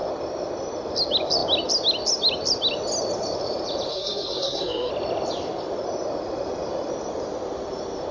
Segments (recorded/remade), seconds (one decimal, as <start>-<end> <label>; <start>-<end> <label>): 0.0-3.9 recorded; 3.9-4.9 remade; 4.9-8.1 recorded